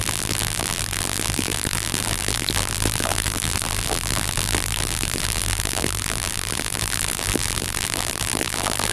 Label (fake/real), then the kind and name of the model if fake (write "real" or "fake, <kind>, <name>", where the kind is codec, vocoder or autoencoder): fake, vocoder, BigVGAN v2